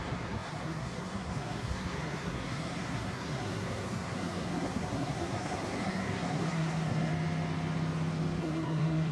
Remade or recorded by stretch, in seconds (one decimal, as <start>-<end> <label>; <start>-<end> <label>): 0.0-7.1 remade; 7.1-8.4 recorded; 8.4-9.1 remade

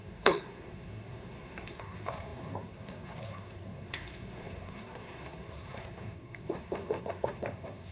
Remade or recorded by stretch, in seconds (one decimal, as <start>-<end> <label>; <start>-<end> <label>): 0.0-7.9 remade

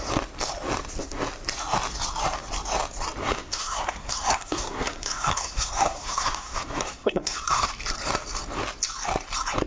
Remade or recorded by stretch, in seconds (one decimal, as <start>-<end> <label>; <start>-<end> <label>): 0.0-3.2 recorded; 3.2-7.7 remade; 7.7-9.7 recorded

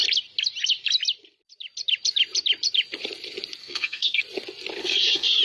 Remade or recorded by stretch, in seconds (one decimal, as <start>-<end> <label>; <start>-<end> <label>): 0.0-3.6 recorded; 3.6-4.2 remade; 4.2-4.8 recorded; 4.8-5.4 remade